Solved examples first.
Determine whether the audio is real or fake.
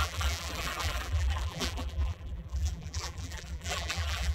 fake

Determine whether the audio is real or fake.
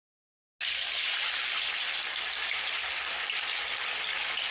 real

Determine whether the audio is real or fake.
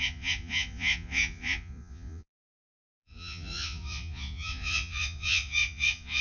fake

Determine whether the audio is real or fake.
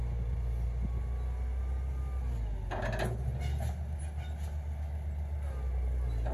real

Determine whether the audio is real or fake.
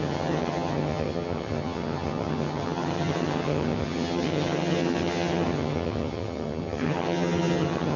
fake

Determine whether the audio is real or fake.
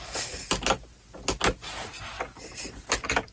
real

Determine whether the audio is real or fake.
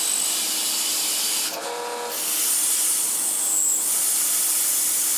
real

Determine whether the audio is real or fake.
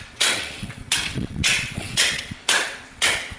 fake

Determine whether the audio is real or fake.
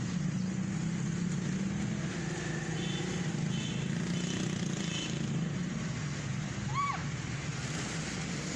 real